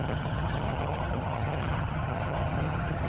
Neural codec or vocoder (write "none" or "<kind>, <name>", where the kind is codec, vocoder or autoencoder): vocoder, HiFi-GAN